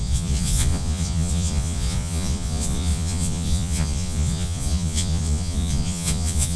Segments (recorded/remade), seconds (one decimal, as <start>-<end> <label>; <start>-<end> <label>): 0.0-6.6 remade